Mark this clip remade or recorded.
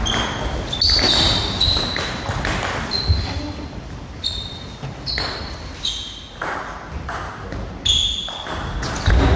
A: recorded